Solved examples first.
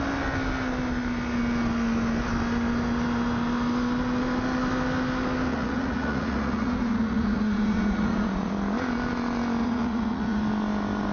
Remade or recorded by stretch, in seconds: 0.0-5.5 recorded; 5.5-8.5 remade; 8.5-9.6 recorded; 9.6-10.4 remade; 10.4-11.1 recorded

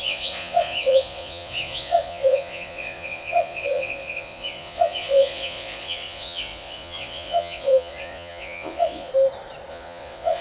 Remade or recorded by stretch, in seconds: 0.0-9.1 remade; 9.1-9.7 recorded; 9.7-10.4 remade

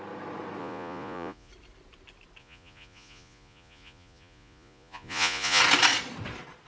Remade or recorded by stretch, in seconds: 0.0-0.6 recorded; 0.6-1.5 remade; 1.5-2.4 recorded; 2.4-5.6 remade; 5.6-6.7 recorded

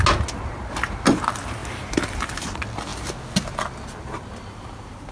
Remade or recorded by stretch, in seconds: 0.0-5.1 recorded

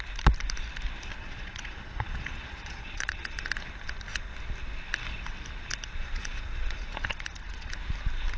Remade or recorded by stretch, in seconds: 0.0-1.1 recorded; 1.1-3.4 remade; 3.4-5.9 recorded; 5.9-7.7 remade; 7.7-8.4 recorded

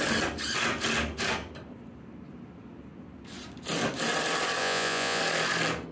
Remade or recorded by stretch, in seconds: 0.0-4.6 recorded; 4.6-5.2 remade; 5.2-5.9 recorded